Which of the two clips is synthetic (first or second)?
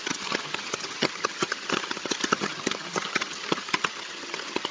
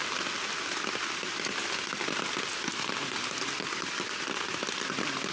first